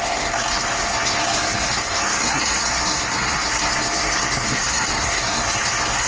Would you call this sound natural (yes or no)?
no